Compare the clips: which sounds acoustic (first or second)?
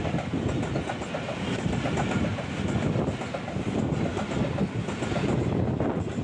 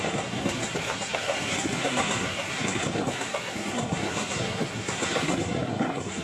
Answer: first